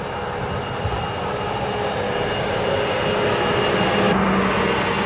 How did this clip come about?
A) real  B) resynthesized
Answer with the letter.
A